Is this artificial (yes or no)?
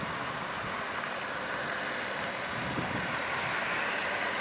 no